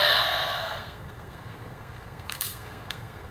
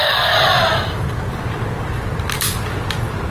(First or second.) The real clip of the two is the second